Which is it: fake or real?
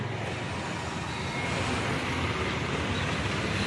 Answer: real